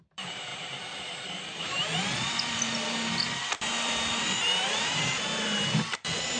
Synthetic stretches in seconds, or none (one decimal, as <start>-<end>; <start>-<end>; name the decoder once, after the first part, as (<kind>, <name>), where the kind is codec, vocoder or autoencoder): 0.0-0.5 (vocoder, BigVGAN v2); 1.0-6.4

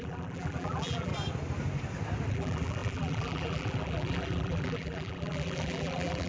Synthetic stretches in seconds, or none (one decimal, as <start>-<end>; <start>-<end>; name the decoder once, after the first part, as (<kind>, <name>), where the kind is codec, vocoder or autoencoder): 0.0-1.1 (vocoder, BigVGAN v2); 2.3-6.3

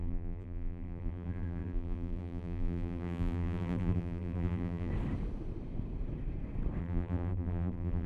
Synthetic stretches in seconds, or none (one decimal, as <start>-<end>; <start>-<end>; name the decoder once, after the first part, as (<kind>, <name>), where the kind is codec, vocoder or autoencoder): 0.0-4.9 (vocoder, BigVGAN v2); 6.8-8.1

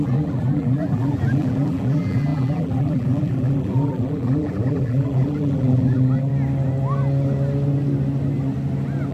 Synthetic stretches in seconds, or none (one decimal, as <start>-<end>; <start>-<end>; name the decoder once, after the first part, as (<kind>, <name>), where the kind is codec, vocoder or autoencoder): 0.0-6.3 (vocoder, BigVGAN v2)

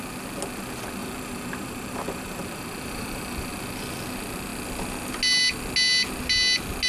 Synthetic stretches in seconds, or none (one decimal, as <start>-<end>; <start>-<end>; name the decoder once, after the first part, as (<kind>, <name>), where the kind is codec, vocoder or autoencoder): 1.0-3.5 (vocoder, BigVGAN v2)